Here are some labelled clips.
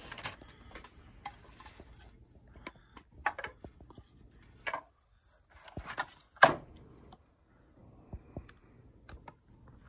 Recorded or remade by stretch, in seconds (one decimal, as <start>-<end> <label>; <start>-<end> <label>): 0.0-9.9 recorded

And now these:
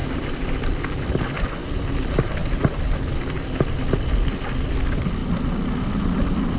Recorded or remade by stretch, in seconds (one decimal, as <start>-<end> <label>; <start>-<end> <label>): 0.0-1.0 remade; 1.0-6.6 recorded

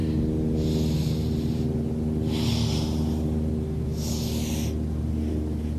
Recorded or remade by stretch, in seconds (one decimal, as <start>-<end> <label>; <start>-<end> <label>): 0.0-5.8 recorded

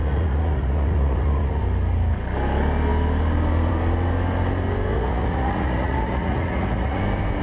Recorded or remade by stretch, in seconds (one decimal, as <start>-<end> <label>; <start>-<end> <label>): 0.0-1.6 remade; 1.6-4.9 recorded; 4.9-7.0 remade; 7.0-7.4 recorded